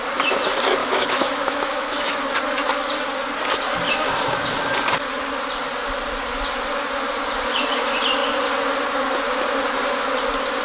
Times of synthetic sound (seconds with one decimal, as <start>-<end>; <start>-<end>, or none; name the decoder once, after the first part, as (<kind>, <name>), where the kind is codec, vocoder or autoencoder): 0.8-2.2 (autoencoder, DAC-VAE)